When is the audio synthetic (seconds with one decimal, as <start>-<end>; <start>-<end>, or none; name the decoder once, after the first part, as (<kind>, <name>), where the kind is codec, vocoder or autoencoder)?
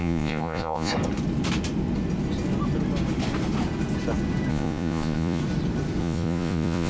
0.0-0.9 (vocoder, Vocos); 4.5-5.4; 6.0-6.9